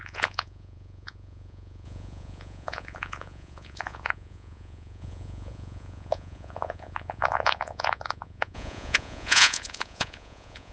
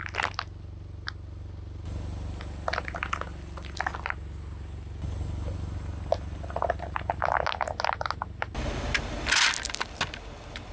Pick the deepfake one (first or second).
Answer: first